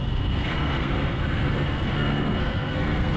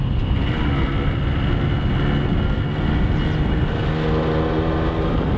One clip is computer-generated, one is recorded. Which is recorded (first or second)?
second